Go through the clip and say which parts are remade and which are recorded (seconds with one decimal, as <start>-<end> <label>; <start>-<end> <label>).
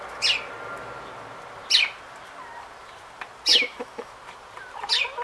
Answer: 0.0-3.5 recorded; 3.5-4.1 remade; 4.1-5.2 recorded